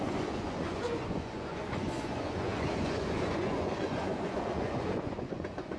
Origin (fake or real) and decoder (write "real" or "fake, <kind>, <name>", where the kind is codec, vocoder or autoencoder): fake, vocoder, Vocos